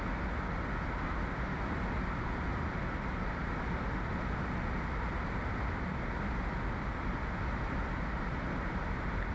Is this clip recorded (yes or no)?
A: yes